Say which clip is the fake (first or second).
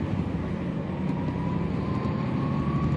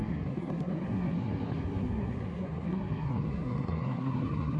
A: second